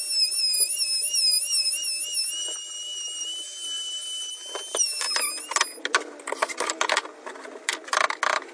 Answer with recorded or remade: recorded